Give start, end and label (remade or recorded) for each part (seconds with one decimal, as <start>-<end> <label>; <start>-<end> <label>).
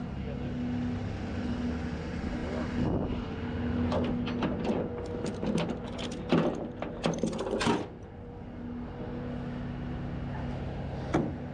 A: 0.0-11.5 recorded